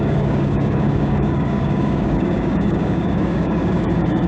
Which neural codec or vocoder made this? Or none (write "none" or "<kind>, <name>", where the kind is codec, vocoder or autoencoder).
codec, DAC